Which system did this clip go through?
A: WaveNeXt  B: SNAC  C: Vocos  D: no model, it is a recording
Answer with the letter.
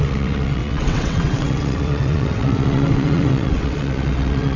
A